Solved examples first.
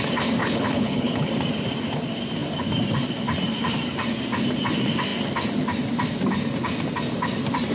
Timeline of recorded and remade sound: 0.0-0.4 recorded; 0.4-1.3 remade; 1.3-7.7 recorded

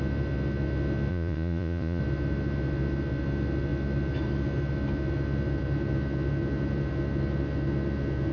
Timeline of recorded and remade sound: 0.0-1.1 recorded; 1.1-2.0 remade; 2.0-8.3 recorded

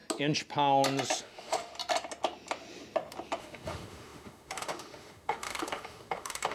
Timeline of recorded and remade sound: 0.0-1.2 recorded; 1.2-1.7 remade; 1.7-3.4 recorded; 3.4-6.5 remade

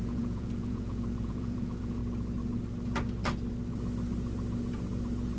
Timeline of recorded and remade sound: 0.0-2.0 remade; 2.0-5.4 recorded